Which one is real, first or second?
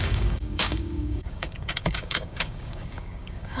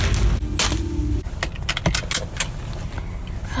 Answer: second